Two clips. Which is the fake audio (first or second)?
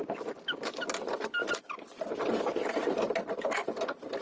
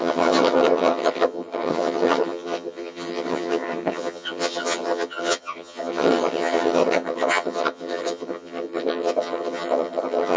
second